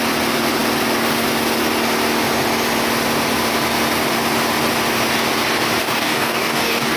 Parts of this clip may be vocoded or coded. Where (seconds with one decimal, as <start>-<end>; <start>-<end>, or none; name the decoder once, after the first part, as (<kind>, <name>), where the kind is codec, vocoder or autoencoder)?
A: 5.8-7.0 (codec, DAC)